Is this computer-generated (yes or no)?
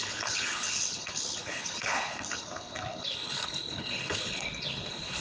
yes